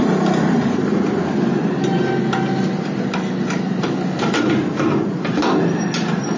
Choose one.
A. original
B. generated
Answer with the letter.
A